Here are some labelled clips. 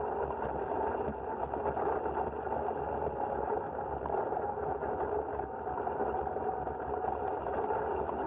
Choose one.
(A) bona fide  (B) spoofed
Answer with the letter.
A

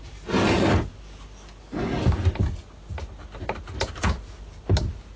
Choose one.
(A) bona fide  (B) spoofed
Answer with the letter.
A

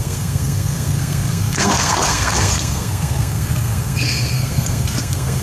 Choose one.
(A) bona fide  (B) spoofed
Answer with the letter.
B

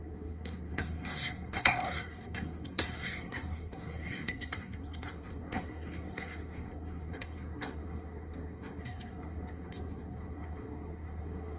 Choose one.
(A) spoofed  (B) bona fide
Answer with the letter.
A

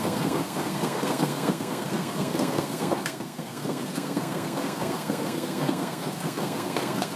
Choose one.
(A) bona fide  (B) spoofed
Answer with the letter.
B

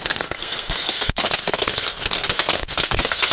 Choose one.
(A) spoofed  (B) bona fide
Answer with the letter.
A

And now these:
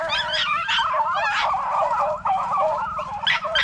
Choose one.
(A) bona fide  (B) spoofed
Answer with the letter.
A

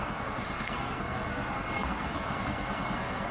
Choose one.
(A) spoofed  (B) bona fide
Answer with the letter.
A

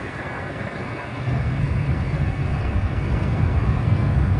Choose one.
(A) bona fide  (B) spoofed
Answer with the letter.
B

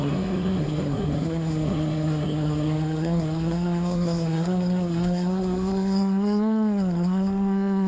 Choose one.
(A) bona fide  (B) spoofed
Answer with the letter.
B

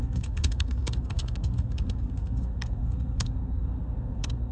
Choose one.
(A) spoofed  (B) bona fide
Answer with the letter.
A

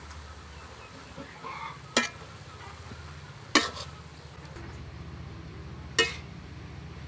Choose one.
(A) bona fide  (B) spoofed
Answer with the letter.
A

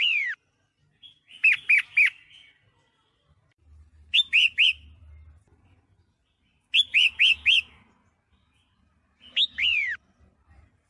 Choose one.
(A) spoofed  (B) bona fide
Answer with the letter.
B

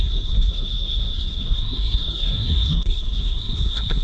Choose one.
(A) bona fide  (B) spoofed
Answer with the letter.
B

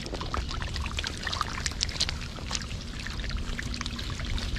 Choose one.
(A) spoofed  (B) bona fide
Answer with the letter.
B